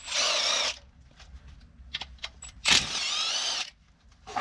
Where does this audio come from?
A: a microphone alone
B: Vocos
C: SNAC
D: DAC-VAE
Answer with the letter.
A